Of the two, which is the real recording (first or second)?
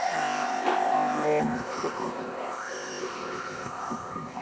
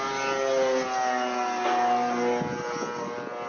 second